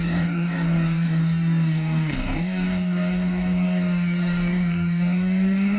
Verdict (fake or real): fake